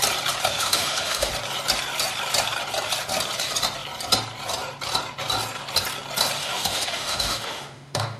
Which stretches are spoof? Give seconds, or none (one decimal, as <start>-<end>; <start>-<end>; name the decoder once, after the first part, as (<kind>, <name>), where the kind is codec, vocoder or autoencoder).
0.5-1.3 (autoencoder, DAC-VAE); 6.4-8.2